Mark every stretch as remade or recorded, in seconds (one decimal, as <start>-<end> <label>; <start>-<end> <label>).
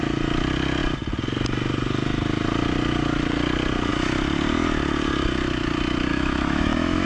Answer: 0.0-6.1 recorded; 6.1-7.1 remade